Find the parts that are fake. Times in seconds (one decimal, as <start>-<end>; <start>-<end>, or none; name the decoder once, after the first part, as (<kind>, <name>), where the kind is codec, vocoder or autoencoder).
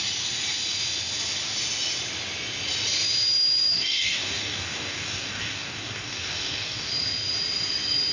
3.7-6.9 (codec, DAC)